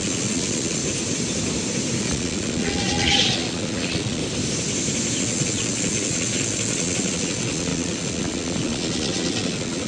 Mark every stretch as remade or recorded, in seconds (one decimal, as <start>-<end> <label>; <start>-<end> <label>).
0.0-0.8 remade; 0.8-2.0 recorded; 2.0-4.2 remade; 4.2-5.2 recorded; 5.2-9.9 remade

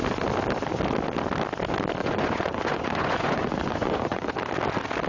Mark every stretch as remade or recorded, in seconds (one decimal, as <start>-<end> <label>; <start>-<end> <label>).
0.0-2.0 recorded; 2.0-4.3 remade; 4.3-5.1 recorded

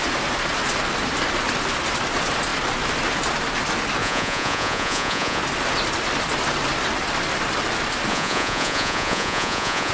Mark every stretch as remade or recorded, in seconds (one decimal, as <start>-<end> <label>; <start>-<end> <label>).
0.0-4.0 recorded; 4.0-5.4 remade; 5.4-8.1 recorded; 8.1-9.9 remade

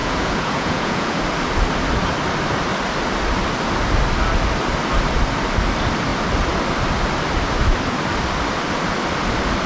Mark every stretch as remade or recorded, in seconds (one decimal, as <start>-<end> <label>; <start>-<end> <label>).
0.0-1.2 remade; 1.2-9.7 recorded